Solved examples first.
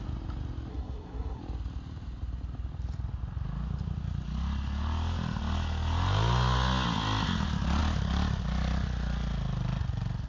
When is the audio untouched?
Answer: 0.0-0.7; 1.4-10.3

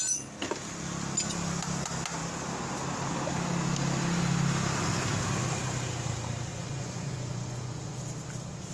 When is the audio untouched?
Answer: 0.0-6.5; 8.0-8.7

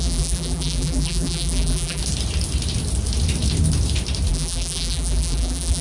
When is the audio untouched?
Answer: 2.0-4.3

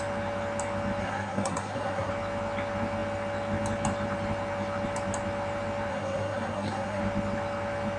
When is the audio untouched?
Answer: 0.0-1.0; 2.1-5.9; 7.0-8.0

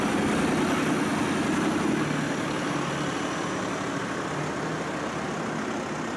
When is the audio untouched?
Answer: 0.0-6.2

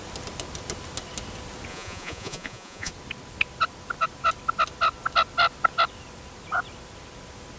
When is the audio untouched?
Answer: 0.0-1.7; 2.9-7.6